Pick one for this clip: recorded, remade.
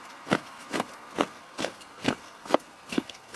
remade